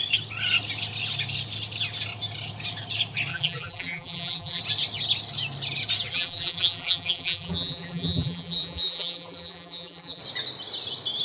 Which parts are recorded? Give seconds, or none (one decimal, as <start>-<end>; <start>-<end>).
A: 0.0-3.3; 4.6-6.1; 10.2-11.2